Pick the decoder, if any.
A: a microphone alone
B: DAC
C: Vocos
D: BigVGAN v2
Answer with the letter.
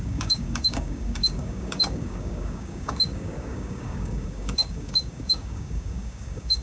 B